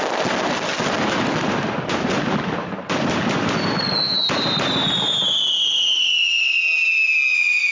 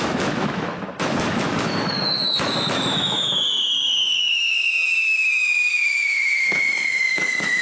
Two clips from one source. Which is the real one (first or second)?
first